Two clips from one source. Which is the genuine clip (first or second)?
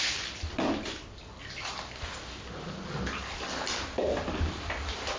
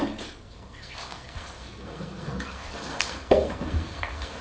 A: first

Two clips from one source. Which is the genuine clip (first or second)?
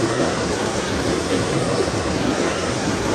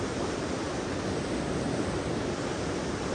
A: second